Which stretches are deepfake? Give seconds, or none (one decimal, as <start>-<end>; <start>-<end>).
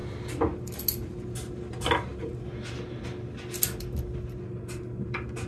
none